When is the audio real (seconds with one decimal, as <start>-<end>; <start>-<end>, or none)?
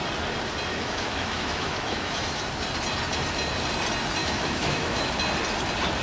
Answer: 0.0-0.7; 2.4-4.2; 5.1-6.0